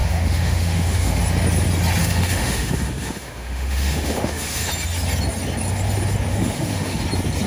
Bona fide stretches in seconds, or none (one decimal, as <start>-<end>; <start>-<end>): 1.2-2.0; 4.7-6.3; 7.0-7.5